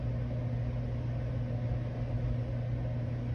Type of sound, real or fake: real